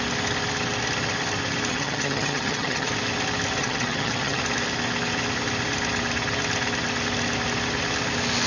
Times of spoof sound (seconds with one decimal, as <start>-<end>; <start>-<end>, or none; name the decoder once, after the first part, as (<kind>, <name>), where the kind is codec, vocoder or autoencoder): 1.7-2.9 (vocoder, HiFi-GAN); 3.6-4.4